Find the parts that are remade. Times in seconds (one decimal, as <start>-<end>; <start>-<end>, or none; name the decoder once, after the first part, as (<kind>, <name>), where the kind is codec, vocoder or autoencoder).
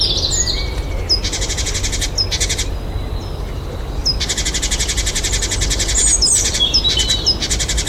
6.0-7.9 (vocoder, BigVGAN v2)